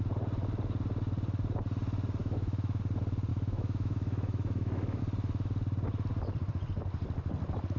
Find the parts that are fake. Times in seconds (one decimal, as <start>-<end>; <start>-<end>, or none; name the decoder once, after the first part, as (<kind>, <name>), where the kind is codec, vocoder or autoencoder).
2.2-2.8 (autoencoder, DAC-VAE); 3.3-5.0